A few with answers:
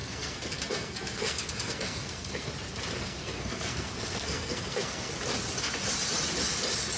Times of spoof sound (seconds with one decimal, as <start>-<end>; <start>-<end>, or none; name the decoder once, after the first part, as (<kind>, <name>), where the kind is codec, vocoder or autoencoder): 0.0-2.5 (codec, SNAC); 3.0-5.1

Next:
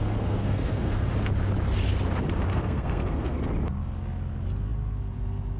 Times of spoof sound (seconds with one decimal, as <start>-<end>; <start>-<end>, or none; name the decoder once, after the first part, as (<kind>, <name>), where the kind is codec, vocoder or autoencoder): 0.0-1.1 (codec, SNAC); 2.5-3.4

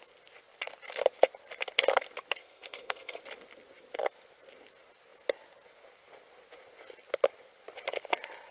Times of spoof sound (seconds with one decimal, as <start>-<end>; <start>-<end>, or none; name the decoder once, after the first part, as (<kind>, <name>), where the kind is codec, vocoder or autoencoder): 2.4-3.2 (codec, SNAC)